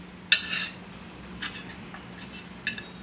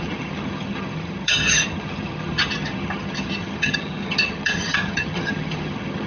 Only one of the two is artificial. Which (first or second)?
second